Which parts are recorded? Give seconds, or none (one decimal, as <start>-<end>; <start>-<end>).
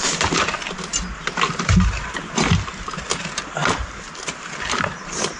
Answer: 0.0-5.4